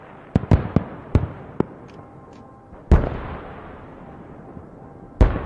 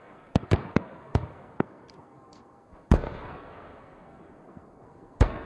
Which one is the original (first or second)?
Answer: first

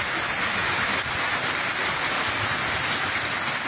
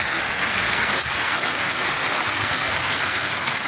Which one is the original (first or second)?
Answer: first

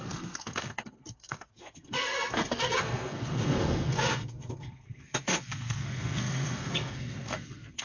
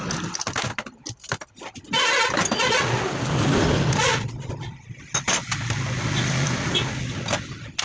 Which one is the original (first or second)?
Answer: second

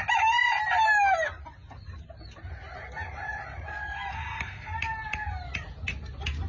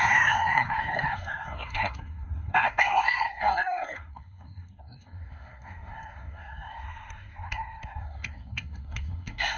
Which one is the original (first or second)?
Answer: first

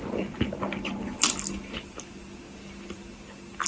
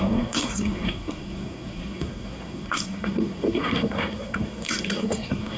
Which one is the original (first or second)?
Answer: first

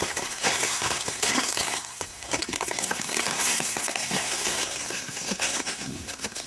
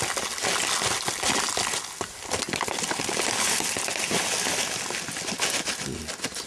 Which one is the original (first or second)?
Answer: second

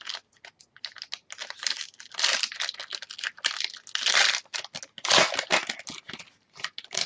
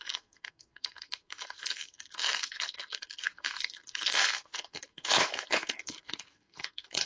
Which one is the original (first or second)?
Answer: first